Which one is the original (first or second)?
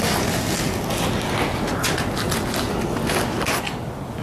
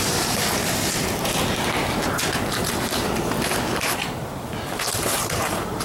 first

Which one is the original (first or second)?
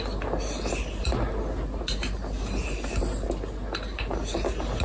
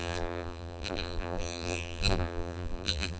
first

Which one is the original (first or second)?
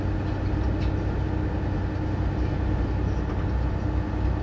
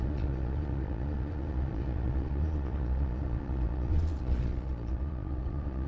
first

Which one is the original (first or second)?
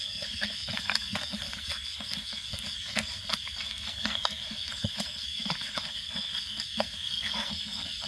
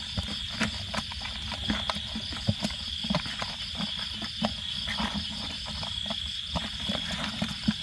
second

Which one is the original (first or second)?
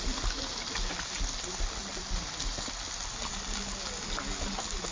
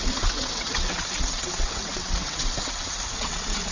first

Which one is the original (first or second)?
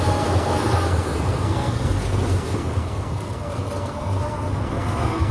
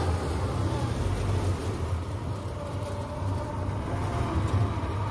second